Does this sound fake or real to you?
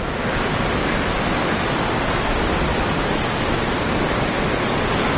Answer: real